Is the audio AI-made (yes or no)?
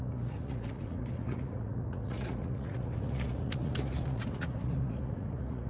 yes